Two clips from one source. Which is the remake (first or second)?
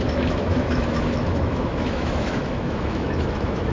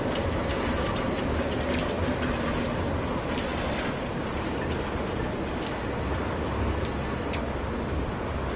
first